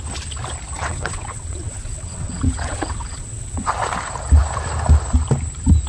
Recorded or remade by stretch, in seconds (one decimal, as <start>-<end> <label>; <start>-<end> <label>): 0.0-0.8 recorded; 0.8-3.7 remade; 3.7-5.9 recorded